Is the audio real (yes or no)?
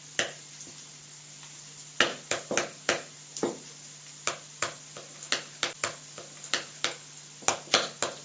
yes